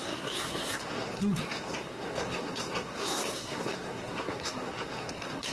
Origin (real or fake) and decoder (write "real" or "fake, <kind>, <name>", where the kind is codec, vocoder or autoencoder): fake, codec, SNAC